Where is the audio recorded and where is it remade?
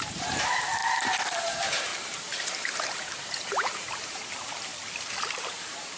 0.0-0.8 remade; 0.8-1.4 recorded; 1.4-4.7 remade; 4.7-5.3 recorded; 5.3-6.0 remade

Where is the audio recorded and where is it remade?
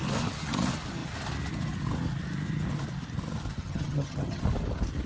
0.0-3.6 recorded; 3.6-4.4 remade; 4.4-5.1 recorded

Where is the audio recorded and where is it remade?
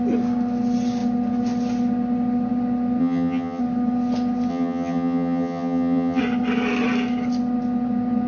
0.0-3.0 recorded; 3.0-3.6 remade; 3.6-4.5 recorded; 4.5-6.2 remade; 6.2-8.3 recorded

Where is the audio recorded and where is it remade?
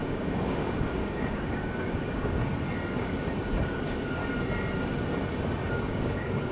0.0-2.4 remade; 2.4-2.9 recorded; 2.9-4.2 remade; 4.2-5.7 recorded; 5.7-6.5 remade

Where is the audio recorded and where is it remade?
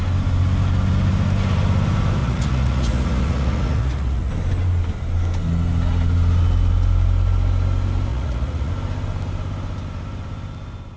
0.0-2.2 recorded; 2.2-4.3 remade; 4.3-8.1 recorded; 8.1-8.7 remade; 8.7-11.0 recorded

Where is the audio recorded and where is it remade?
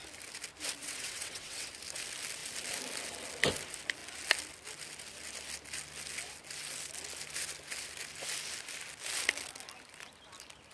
0.0-0.8 recorded; 0.8-1.7 remade; 1.7-10.7 recorded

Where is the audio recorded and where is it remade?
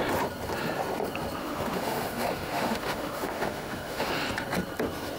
0.0-1.4 recorded; 1.4-4.1 remade; 4.1-5.2 recorded